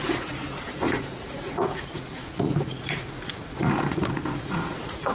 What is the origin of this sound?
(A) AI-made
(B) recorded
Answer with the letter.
A